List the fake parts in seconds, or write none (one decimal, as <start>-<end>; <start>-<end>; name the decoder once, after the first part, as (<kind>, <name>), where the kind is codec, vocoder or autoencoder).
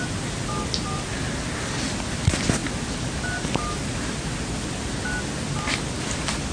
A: none